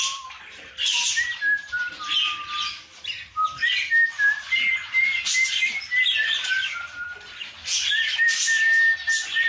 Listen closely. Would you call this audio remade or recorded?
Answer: recorded